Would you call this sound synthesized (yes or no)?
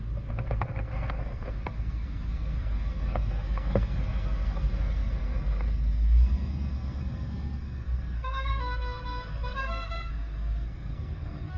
yes